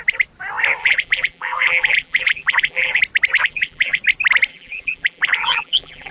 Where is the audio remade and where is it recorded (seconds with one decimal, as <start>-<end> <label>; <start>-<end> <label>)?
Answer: 0.0-0.8 recorded; 0.8-3.0 remade; 3.0-3.4 recorded; 3.4-4.0 remade; 4.0-4.5 recorded; 4.5-6.1 remade